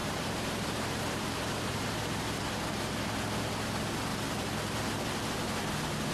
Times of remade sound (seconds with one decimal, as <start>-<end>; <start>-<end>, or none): 0.0-2.4; 4.1-5.6

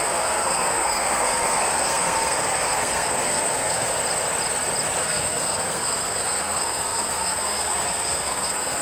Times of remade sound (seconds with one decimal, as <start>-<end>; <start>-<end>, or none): 0.0-4.0; 5.0-8.8

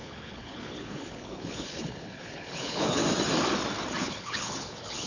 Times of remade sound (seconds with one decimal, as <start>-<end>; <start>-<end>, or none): 0.0-3.0; 4.0-5.1

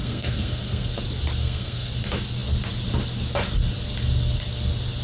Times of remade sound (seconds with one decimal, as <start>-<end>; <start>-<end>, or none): 0.0-1.0; 1.4-1.9

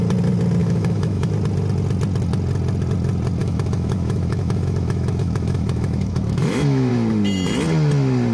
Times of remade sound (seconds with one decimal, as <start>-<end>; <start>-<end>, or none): 0.6-1.3; 3.4-6.9

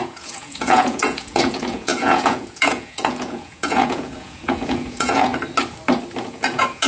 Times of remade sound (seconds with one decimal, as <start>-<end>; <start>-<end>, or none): 0.0-5.3; 6.2-6.9

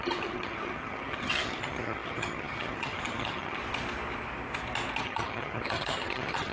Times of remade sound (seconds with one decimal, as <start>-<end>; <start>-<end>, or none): 0.0-3.6; 5.0-6.5

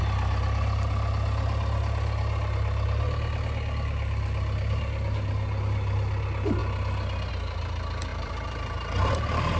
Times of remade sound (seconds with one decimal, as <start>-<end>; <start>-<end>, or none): 8.1-9.6